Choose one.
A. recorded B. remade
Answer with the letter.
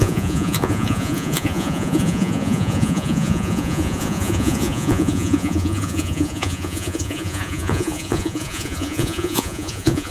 B